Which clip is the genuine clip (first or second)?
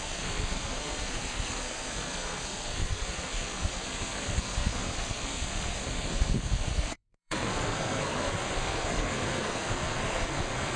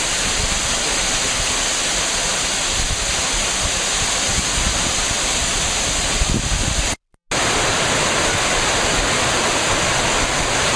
second